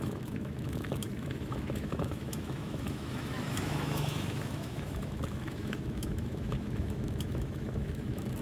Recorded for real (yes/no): no